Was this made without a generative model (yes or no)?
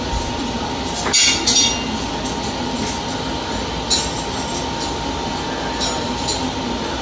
yes